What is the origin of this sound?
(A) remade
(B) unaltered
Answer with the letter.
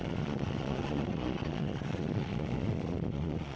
A